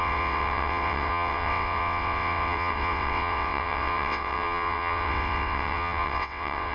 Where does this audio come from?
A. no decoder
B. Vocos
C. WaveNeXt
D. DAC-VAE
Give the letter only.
C